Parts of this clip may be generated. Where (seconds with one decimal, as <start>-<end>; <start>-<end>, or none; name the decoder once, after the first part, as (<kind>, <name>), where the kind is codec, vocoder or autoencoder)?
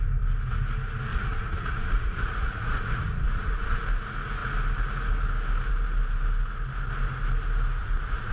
1.1-3.8 (vocoder, Vocos); 7.8-8.3